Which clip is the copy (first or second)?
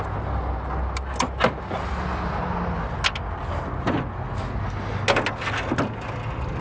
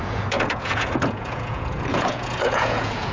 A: second